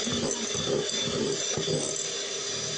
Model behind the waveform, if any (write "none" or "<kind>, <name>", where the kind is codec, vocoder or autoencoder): none